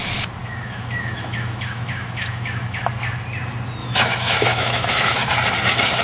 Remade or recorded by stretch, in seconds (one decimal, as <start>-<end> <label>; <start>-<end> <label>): 0.0-0.4 recorded; 0.4-2.8 remade; 2.8-3.8 recorded; 3.8-5.3 remade; 5.3-6.0 recorded